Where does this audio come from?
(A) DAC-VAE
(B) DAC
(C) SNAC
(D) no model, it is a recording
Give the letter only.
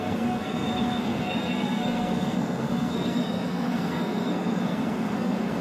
C